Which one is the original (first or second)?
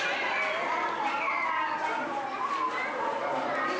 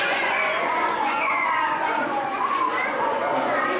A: first